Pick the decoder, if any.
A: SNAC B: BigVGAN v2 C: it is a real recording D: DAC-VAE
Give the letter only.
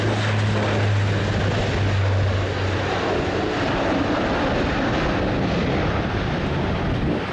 C